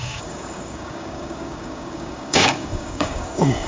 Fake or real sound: fake